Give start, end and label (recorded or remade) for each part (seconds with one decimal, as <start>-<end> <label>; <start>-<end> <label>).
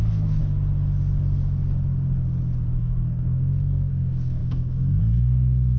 0.0-0.4 remade; 0.4-2.8 recorded; 2.8-5.8 remade